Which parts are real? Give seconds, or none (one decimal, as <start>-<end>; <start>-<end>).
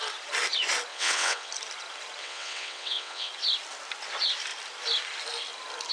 0.0-0.9; 1.5-2.2; 3.3-5.9